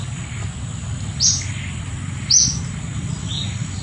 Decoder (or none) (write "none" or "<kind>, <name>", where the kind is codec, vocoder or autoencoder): none